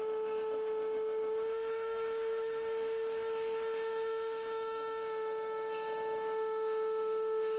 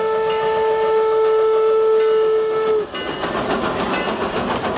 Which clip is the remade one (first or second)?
first